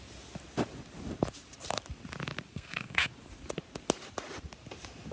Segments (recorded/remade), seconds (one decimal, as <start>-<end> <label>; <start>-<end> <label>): 0.0-2.5 recorded; 2.5-3.1 remade; 3.1-5.1 recorded